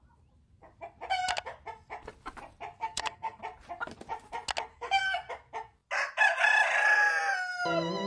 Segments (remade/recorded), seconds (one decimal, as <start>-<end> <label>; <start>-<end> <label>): 0.0-2.8 recorded; 2.8-3.4 remade; 3.4-4.7 recorded; 4.7-5.3 remade; 5.3-8.1 recorded

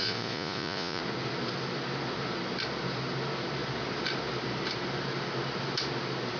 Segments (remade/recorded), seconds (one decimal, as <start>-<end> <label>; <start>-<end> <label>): 0.0-1.0 remade; 1.0-6.4 recorded

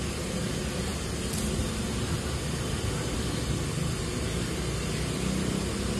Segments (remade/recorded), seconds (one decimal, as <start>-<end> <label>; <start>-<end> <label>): 0.0-6.0 recorded

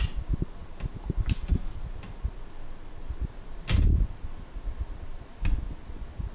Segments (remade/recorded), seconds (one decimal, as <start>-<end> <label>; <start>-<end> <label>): 0.0-6.3 recorded